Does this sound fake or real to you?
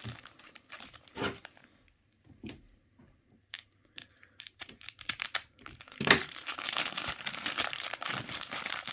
fake